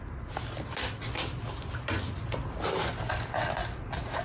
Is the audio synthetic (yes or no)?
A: no